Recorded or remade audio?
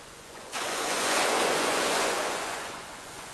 remade